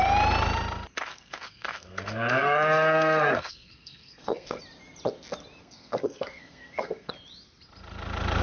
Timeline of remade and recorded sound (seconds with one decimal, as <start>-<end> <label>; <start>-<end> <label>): 0.0-1.1 recorded; 1.1-4.6 remade; 4.6-5.6 recorded; 5.6-7.1 remade; 7.1-8.4 recorded